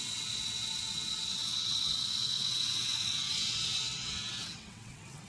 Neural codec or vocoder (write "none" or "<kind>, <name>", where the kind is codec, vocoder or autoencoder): vocoder, WaveNeXt